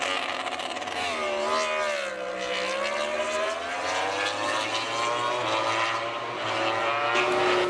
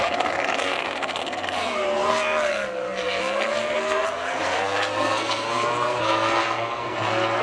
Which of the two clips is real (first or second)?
first